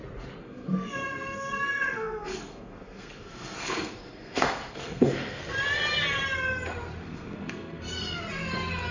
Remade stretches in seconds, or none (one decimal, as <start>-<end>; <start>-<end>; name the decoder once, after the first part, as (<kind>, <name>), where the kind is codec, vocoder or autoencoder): 0.4-5.4 (codec, SNAC); 7.0-7.8